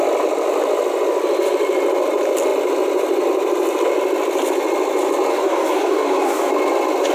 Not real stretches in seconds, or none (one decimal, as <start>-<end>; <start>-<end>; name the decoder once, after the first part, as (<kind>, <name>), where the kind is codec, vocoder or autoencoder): 5.3-6.5 (codec, DAC)